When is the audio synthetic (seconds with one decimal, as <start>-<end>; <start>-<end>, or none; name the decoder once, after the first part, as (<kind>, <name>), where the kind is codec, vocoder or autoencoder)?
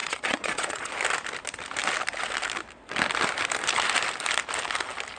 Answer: 0.0-0.9 (vocoder, Vocos)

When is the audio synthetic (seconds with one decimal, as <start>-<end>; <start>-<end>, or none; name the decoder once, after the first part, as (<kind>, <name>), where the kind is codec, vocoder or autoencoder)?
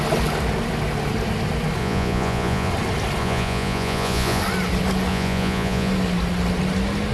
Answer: 1.8-2.7 (vocoder, Vocos); 3.2-4.4; 5.1-5.9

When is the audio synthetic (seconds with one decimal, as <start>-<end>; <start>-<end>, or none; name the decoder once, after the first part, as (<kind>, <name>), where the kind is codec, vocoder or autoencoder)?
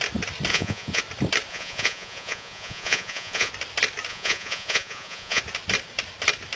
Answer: 0.5-1.0 (vocoder, Vocos); 1.5-3.5; 4.1-5.4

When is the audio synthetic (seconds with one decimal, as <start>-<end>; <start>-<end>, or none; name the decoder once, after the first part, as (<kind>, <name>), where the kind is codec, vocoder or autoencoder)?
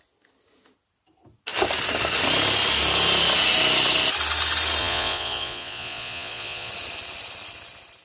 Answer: 4.8-6.7 (vocoder, Vocos)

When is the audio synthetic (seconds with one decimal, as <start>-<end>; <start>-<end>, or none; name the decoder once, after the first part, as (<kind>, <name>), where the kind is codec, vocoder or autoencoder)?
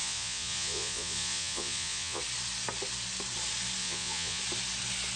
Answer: 0.0-2.2 (vocoder, Vocos); 3.8-4.4